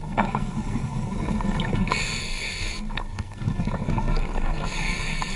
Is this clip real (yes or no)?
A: no